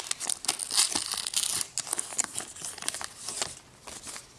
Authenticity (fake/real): real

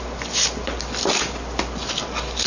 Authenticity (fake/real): real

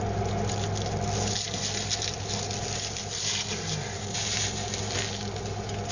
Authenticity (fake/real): real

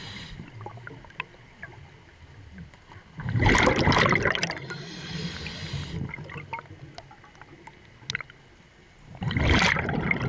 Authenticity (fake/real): real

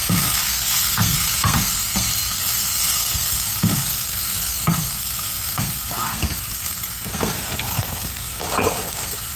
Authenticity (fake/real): fake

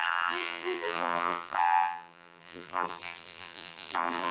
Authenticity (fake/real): fake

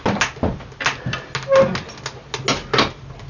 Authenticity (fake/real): real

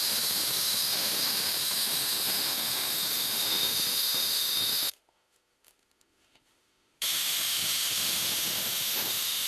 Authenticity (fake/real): fake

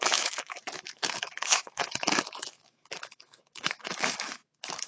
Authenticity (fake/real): fake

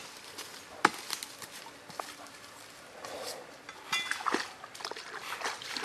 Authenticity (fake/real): real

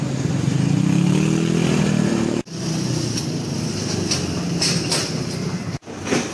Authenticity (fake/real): real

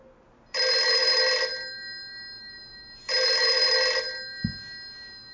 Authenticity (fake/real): real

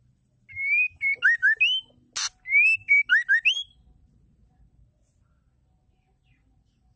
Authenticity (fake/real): real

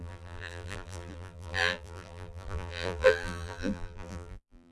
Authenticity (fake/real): fake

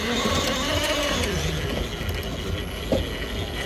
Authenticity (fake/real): real